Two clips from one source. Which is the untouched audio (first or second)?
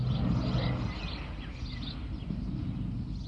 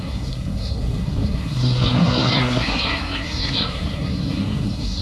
first